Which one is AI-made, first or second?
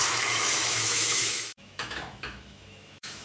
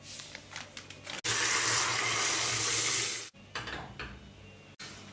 first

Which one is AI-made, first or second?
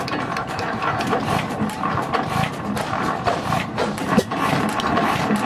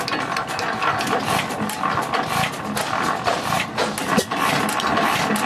first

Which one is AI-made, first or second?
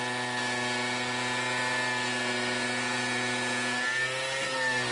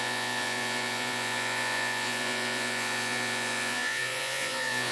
second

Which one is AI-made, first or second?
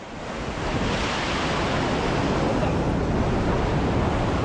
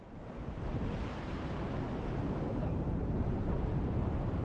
second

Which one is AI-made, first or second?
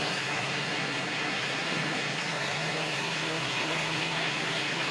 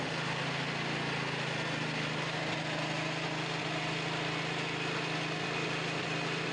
first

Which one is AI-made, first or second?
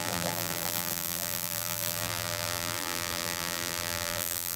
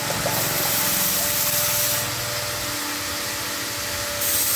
first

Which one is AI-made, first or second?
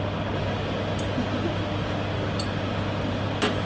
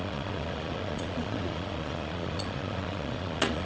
second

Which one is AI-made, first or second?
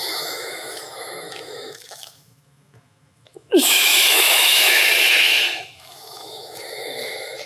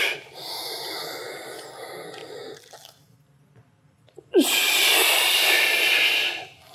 first